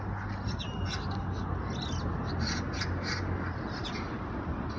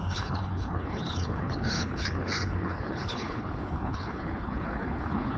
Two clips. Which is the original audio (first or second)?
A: first